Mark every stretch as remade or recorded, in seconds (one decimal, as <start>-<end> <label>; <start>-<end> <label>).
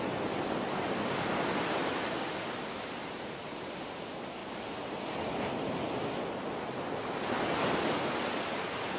0.0-9.0 recorded